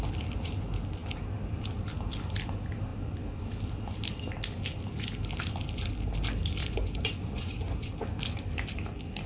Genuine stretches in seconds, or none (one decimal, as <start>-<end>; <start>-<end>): 0.0-6.6; 7.9-9.3

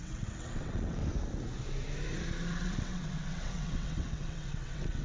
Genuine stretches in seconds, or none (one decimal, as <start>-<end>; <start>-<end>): 1.0-2.5

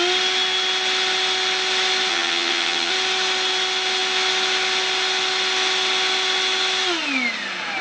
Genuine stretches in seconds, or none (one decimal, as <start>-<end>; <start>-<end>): 0.0-2.1; 2.9-7.8

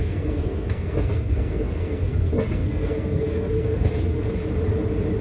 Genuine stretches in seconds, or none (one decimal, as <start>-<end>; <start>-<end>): 4.4-5.2

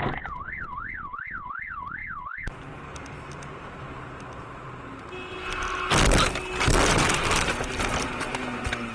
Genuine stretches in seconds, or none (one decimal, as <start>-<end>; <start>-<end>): 0.0-8.9